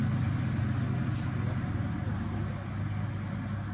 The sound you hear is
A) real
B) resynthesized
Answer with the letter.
A